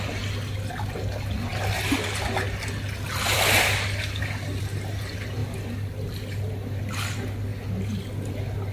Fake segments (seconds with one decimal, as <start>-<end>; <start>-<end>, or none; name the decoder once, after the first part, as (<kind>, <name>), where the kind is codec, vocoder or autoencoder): 1.5-4.6 (vocoder, BigVGAN v2); 5.4-6.8